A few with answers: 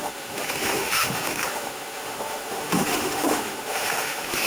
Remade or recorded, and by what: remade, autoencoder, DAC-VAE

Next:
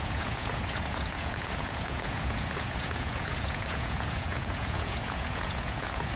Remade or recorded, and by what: remade, vocoder, Vocos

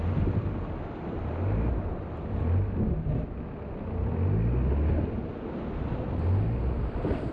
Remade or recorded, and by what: recorded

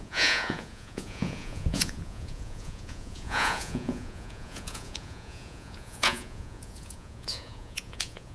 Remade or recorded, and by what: remade, vocoder, Vocos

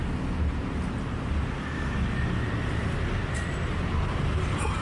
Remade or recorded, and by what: recorded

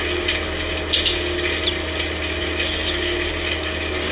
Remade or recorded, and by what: recorded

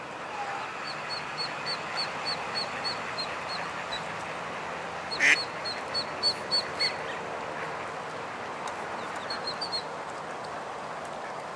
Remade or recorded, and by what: recorded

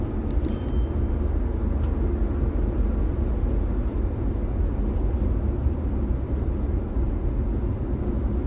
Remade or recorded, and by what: recorded